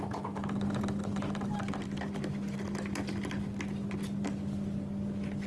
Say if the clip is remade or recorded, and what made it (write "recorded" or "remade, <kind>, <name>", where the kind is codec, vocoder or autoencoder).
recorded